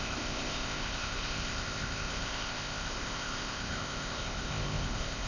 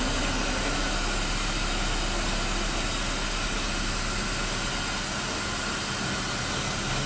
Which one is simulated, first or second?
first